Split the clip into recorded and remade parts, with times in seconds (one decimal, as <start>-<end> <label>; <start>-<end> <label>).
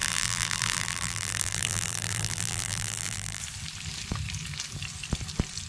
0.0-3.4 remade; 3.4-5.7 recorded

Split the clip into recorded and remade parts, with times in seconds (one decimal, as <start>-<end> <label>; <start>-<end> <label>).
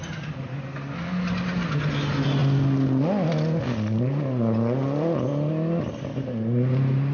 0.0-7.1 recorded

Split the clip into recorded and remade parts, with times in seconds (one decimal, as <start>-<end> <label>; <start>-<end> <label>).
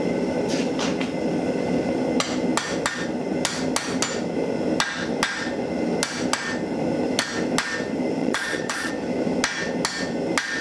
0.0-8.2 recorded; 8.2-8.9 remade; 8.9-10.6 recorded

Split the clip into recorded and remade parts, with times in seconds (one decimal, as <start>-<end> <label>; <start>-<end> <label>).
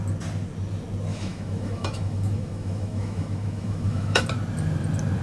0.0-1.1 recorded; 1.1-4.2 remade; 4.2-5.2 recorded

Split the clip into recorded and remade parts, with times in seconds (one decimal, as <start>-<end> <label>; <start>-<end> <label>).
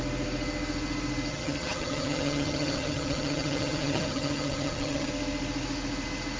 0.0-1.3 recorded; 1.3-5.1 remade; 5.1-6.4 recorded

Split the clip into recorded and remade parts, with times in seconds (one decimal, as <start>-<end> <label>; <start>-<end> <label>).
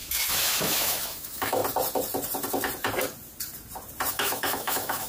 0.0-1.6 remade; 1.6-4.1 recorded; 4.1-5.1 remade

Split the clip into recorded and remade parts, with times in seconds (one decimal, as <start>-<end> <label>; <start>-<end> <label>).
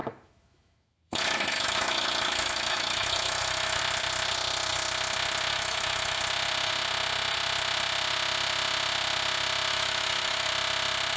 0.0-3.8 remade; 3.8-5.5 recorded; 5.5-6.2 remade; 6.2-9.7 recorded; 9.7-10.5 remade; 10.5-11.2 recorded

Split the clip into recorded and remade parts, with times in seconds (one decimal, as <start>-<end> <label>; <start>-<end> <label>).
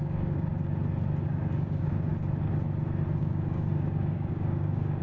0.0-0.5 remade; 0.5-1.3 recorded; 1.3-2.1 remade; 2.1-3.2 recorded; 3.2-5.0 remade